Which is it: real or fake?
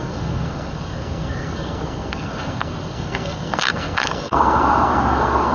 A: fake